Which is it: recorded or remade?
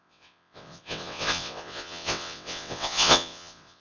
remade